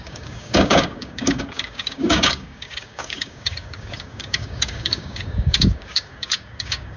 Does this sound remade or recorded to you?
remade